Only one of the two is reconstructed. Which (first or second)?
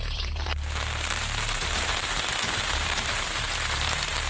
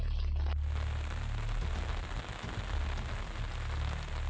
first